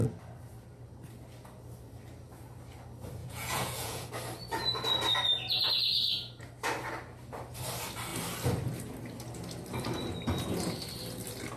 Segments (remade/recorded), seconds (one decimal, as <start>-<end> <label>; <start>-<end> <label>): 0.0-3.2 recorded; 3.2-4.1 remade; 4.1-11.6 recorded